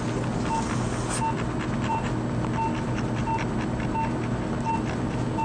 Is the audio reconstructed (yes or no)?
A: no